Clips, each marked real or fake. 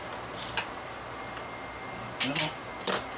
real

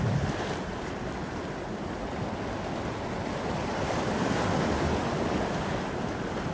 real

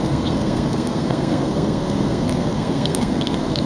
fake